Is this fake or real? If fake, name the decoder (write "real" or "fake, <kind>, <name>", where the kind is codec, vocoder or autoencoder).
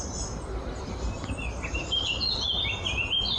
real